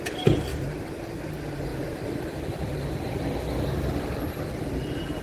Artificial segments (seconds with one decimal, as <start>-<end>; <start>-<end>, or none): none